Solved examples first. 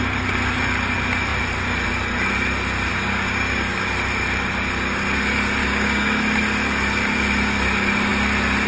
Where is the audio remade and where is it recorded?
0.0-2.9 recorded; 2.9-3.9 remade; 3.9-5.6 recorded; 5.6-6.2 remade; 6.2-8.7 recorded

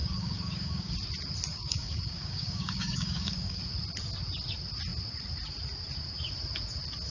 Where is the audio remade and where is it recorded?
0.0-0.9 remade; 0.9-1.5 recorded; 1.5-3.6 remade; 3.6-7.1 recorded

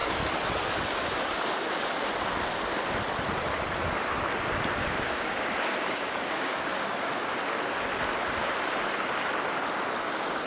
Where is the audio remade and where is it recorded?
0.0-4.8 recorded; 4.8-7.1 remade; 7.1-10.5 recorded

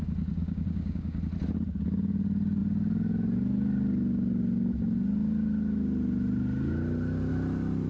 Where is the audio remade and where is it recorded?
0.0-0.4 recorded; 0.4-1.2 remade; 1.2-7.9 recorded

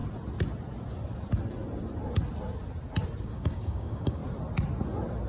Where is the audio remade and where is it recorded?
0.0-3.2 recorded; 3.2-4.2 remade; 4.2-5.3 recorded

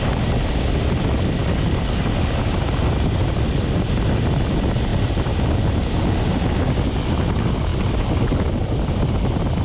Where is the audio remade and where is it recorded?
0.0-1.4 recorded; 1.4-2.0 remade; 2.0-9.6 recorded

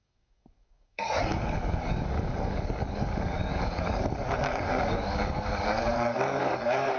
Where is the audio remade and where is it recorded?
0.0-7.0 remade